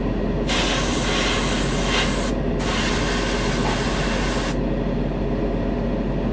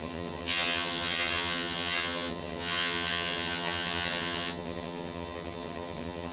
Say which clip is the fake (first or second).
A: second